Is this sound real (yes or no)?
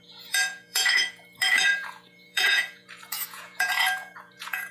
no